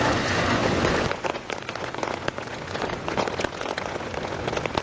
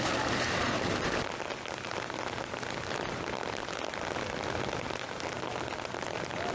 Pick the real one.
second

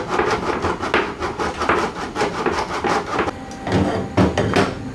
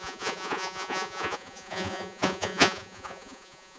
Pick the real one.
first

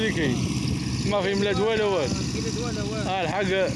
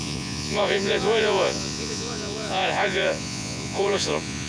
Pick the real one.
first